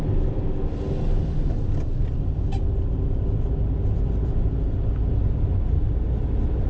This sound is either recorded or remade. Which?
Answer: recorded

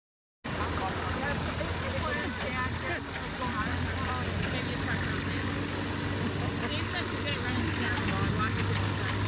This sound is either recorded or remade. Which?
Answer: recorded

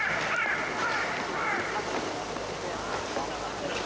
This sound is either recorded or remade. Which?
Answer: recorded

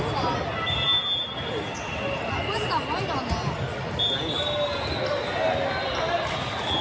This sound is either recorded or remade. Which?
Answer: recorded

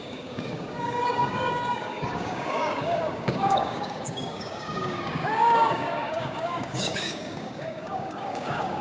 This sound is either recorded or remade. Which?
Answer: remade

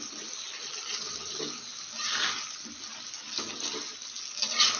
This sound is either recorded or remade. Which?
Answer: recorded